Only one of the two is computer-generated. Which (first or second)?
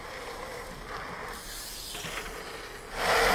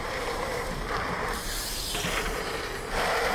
second